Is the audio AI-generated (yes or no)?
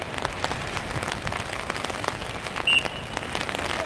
no